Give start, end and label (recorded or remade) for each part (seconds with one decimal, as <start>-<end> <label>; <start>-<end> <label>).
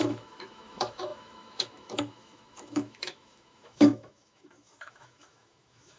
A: 0.0-6.0 remade